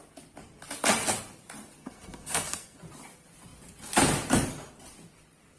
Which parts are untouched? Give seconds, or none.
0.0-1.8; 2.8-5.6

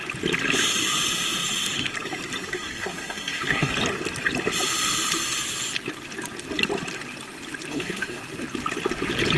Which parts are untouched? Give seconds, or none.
0.0-2.5; 3.7-7.7; 8.2-9.4